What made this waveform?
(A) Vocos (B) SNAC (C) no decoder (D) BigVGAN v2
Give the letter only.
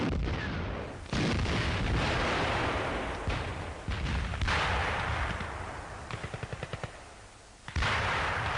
D